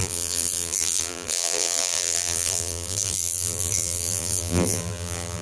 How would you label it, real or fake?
fake